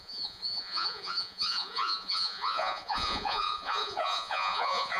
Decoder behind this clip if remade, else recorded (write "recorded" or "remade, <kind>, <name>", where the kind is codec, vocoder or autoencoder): remade, vocoder, Vocos